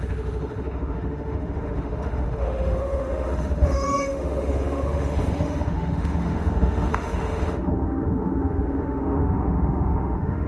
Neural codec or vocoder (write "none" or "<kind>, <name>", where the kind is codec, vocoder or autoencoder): autoencoder, DAC-VAE